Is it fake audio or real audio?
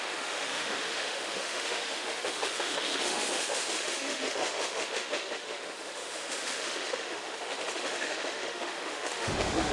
fake